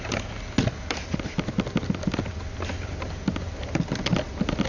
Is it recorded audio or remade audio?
recorded